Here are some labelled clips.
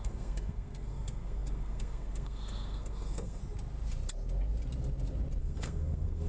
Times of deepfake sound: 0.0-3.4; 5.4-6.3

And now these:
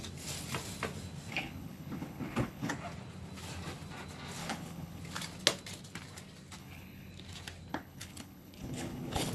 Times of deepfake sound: 1.3-2.7; 4.4-5.0; 6.6-7.1; 7.7-9.3

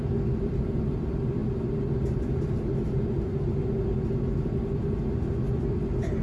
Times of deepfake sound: none

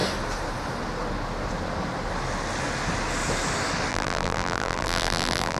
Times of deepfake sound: 3.9-5.6